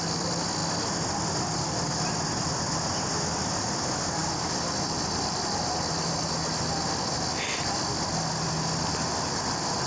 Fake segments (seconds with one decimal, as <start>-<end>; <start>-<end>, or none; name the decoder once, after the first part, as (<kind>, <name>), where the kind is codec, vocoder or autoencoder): none

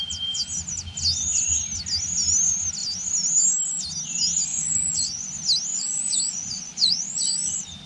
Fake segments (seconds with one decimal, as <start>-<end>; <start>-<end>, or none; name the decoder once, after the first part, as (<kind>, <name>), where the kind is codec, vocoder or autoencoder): 4.5-5.3 (vocoder, Vocos); 5.7-7.5

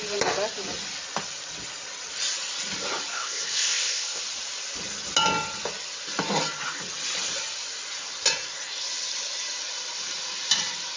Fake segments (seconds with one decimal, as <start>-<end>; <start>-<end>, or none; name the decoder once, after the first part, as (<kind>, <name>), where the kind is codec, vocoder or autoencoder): 3.1-4.2 (codec, ZipCodec)

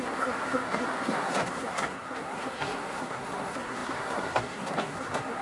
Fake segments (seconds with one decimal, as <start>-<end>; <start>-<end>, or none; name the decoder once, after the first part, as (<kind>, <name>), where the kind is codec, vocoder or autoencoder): 0.0-5.4 (codec, SNAC)

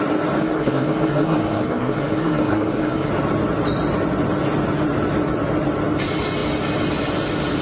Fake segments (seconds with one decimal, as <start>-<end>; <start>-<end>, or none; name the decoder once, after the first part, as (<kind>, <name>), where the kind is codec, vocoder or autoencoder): 0.4-3.1 (codec, SNAC)

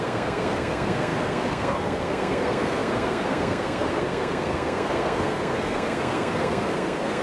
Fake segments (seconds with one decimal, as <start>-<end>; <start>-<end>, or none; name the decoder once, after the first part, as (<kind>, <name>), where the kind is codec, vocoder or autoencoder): 0.0-7.2 (codec, SNAC)